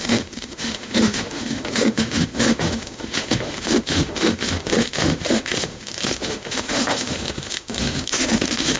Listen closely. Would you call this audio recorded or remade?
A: remade